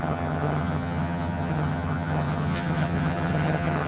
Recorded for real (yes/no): no